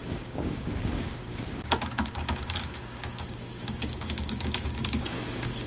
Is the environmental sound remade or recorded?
remade